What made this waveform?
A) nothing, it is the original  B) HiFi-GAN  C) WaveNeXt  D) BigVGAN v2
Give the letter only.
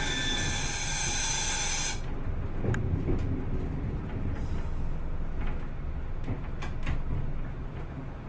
A